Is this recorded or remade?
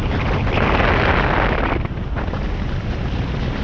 recorded